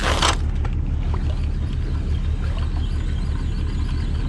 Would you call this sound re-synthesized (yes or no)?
no